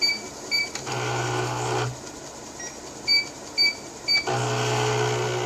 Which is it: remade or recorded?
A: recorded